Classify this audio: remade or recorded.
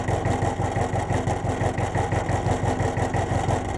recorded